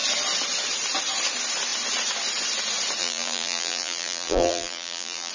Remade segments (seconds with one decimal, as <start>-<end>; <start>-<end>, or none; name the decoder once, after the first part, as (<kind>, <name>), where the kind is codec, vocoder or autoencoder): 3.0-5.3 (vocoder, BigVGAN v2)